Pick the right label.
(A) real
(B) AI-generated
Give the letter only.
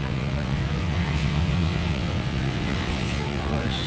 B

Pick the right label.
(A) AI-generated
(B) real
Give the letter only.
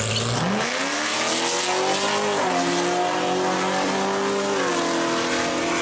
B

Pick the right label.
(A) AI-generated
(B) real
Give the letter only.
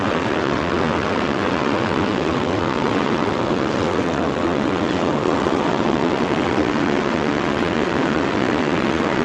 A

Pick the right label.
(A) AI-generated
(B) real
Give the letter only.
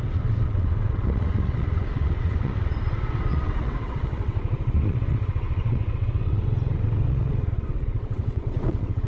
A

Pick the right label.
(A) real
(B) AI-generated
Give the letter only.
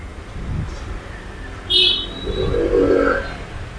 A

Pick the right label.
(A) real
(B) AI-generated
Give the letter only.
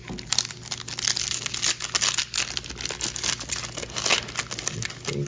A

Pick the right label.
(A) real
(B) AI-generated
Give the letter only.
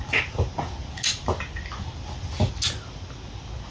A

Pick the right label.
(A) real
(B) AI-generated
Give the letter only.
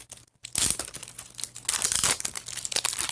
A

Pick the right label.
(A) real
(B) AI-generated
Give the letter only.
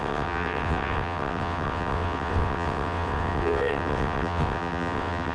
B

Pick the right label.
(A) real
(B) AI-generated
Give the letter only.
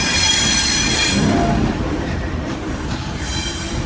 A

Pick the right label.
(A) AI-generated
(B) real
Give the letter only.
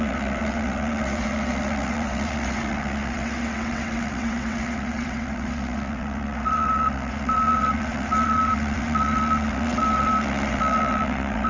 A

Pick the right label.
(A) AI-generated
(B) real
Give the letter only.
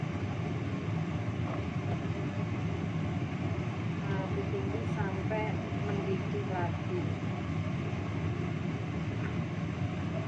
B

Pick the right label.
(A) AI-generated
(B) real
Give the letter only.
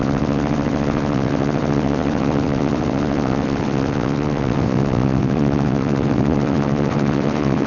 A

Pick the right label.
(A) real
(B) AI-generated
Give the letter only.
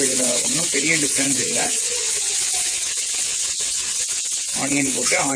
B